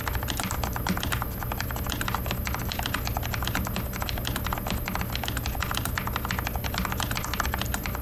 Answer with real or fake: real